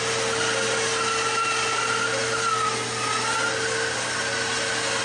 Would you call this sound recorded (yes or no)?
yes